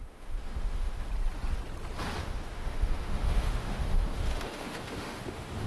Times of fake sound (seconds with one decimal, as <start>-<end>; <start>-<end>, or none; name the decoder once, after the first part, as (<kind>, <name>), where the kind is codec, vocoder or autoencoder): 0.0-1.1 (autoencoder, DAC-VAE); 2.2-5.7